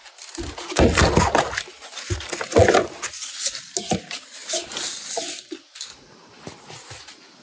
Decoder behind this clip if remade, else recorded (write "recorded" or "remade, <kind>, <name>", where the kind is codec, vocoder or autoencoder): recorded